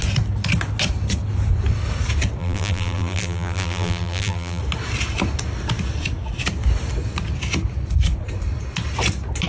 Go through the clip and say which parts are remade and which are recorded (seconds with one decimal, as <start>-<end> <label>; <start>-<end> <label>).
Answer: 0.0-2.4 recorded; 2.4-4.6 remade; 4.6-9.5 recorded